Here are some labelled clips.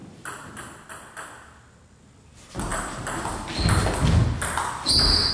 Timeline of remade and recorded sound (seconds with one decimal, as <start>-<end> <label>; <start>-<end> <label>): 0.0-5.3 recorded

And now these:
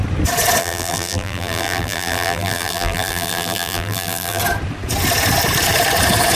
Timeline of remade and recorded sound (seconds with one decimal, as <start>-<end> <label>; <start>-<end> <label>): 0.0-0.6 recorded; 0.6-4.4 remade; 4.4-6.3 recorded

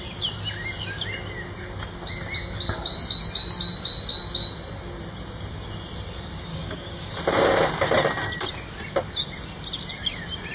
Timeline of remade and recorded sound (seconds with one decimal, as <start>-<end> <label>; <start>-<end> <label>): 0.0-6.5 recorded; 6.5-7.1 remade; 7.1-10.5 recorded

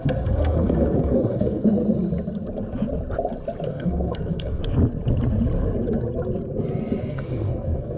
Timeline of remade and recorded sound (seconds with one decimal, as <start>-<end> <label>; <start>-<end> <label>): 0.0-1.8 remade; 1.8-3.7 recorded; 3.7-4.6 remade; 4.6-7.1 recorded; 7.1-8.0 remade

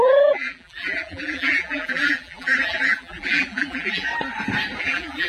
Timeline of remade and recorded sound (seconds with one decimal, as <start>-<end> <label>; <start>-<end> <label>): 0.0-4.1 remade; 4.1-4.8 recorded; 4.8-5.3 remade

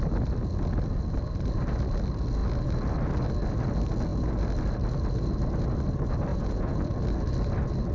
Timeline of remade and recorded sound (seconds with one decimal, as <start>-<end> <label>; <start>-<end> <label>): 0.0-6.3 recorded; 6.3-6.8 remade; 6.8-7.9 recorded

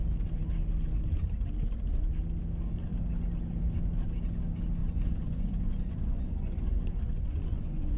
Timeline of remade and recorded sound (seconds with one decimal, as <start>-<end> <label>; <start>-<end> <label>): 0.0-4.8 recorded; 4.8-8.0 remade